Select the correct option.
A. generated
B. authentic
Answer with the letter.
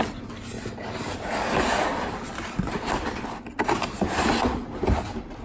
B